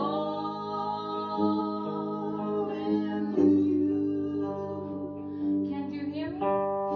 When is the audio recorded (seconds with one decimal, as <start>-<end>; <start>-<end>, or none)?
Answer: 0.0-7.0